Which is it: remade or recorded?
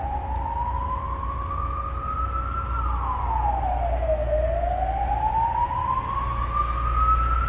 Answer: recorded